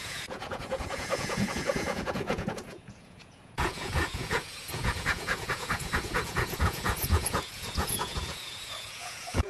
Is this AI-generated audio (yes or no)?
yes